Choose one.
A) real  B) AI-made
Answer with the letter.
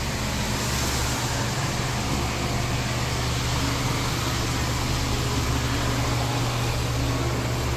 A